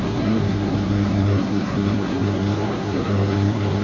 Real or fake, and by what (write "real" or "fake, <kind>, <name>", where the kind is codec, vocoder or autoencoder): fake, codec, SNAC